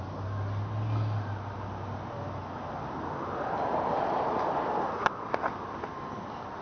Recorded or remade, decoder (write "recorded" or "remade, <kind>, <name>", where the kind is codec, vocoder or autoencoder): recorded